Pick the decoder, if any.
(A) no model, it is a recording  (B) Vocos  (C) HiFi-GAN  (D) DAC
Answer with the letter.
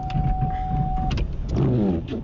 A